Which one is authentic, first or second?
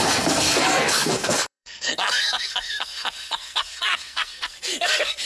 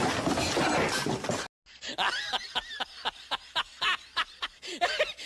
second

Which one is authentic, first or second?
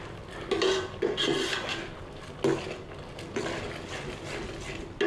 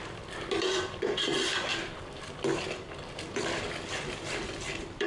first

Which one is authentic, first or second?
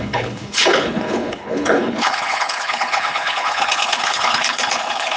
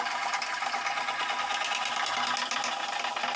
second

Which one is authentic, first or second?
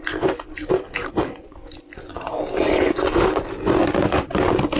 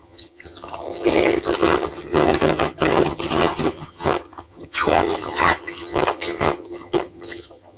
first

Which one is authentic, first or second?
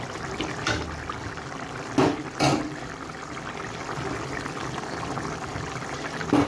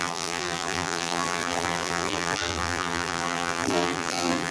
first